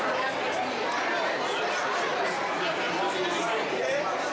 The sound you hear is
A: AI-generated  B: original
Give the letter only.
B